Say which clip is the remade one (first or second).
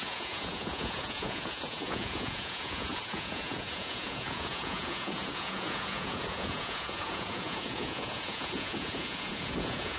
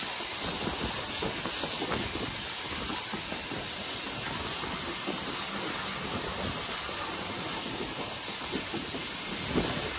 first